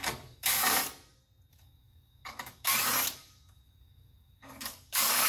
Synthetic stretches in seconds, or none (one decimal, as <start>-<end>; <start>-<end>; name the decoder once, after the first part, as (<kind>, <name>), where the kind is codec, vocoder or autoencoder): 0.0-0.8 (codec, DAC); 1.5-2.7; 3.2-5.3